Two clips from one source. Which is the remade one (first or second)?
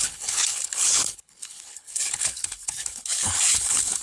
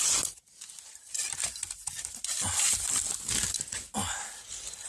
first